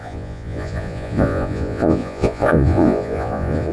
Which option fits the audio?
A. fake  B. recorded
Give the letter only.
A